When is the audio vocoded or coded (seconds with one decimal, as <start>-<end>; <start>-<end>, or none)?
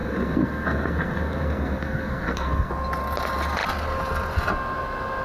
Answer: 0.0-2.7